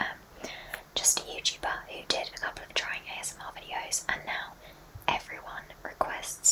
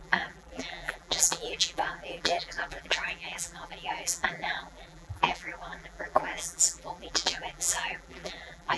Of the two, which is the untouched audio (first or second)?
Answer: first